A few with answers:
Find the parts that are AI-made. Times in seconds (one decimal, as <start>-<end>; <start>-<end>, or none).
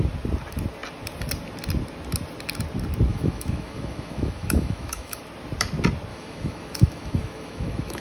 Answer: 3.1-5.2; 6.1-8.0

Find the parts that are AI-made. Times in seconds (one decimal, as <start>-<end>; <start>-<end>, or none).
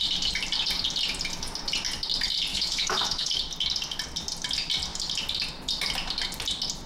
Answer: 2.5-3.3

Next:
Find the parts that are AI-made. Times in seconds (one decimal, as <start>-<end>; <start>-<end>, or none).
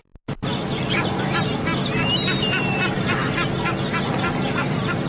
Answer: none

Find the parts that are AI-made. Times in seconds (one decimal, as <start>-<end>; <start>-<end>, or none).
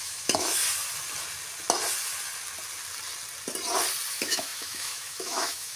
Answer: 0.0-0.6; 4.1-5.8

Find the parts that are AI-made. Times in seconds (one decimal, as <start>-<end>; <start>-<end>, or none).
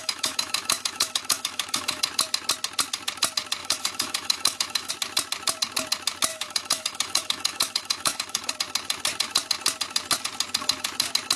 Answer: 0.0-2.0; 3.6-4.9; 6.3-8.5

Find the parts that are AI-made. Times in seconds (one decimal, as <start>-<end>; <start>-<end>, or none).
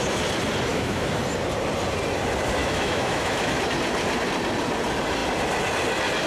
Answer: 0.7-1.2; 2.6-3.6